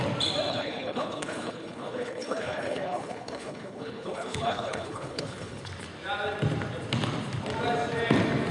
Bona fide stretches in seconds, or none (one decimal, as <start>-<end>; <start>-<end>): 0.0-0.5; 5.6-8.5